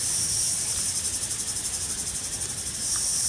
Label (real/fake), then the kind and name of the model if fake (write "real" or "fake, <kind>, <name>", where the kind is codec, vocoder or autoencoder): real